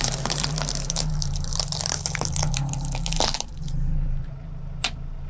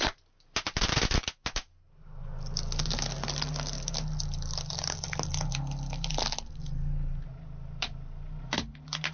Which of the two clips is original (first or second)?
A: second